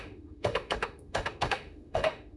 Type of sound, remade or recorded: remade